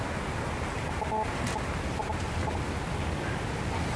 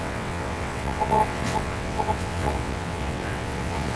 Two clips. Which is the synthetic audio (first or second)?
second